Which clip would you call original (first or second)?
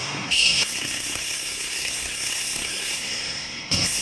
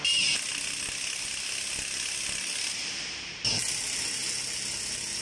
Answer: second